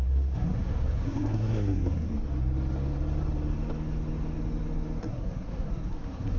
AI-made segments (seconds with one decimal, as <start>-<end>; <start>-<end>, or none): 0.0-2.1; 5.0-6.4